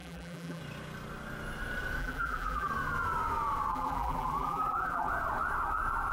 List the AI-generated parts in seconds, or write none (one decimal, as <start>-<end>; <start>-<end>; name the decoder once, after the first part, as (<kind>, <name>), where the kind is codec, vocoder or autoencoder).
0.0-0.6 (vocoder, BigVGAN v2); 2.0-2.7; 3.7-5.1